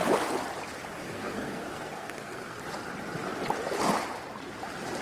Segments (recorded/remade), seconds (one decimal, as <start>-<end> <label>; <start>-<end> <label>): 0.0-1.0 recorded; 1.0-2.6 remade; 2.6-5.0 recorded